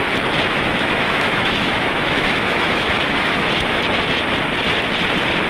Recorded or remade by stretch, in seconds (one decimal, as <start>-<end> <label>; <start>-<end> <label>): 0.0-0.5 recorded; 0.5-3.8 remade; 3.8-5.5 recorded